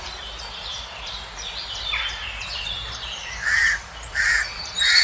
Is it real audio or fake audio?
fake